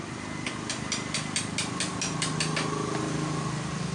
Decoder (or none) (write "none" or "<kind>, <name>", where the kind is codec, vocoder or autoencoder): none